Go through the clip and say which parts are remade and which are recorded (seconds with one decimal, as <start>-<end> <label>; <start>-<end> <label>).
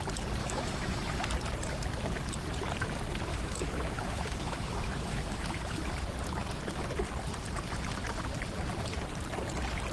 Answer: 0.0-0.4 recorded; 0.4-1.1 remade; 1.1-3.3 recorded; 3.3-5.8 remade; 5.8-9.9 recorded